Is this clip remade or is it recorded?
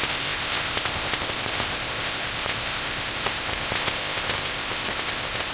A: remade